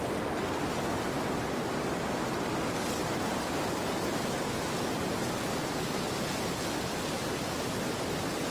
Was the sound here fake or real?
real